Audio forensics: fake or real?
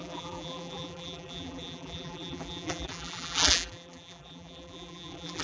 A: fake